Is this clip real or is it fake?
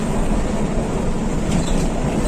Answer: real